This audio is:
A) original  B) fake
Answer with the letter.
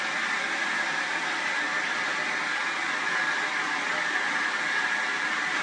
A